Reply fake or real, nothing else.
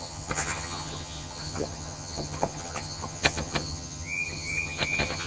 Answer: fake